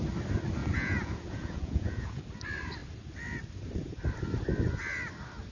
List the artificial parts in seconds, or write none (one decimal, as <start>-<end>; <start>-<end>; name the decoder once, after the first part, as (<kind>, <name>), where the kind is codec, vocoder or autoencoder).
0.6-2.2 (vocoder, Vocos)